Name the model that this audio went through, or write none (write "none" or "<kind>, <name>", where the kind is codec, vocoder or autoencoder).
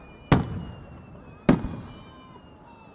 none